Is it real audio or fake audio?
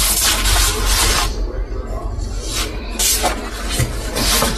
real